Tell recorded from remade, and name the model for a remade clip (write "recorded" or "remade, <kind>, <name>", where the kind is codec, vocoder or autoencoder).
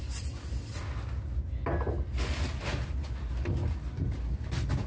recorded